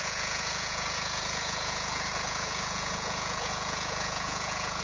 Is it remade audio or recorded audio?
remade